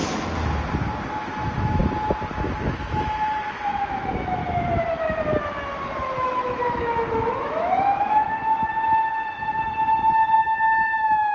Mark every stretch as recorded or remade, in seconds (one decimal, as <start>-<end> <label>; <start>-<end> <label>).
0.0-1.0 recorded; 1.0-1.8 remade; 1.8-2.3 recorded; 2.3-4.4 remade; 4.4-6.0 recorded; 6.0-11.3 remade